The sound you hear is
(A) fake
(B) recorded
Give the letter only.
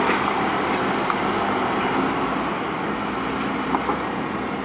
B